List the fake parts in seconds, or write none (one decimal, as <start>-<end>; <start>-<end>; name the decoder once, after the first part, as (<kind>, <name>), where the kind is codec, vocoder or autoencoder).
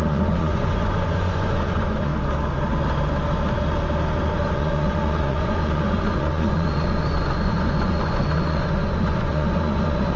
0.0-2.1 (vocoder, Vocos); 4.5-10.2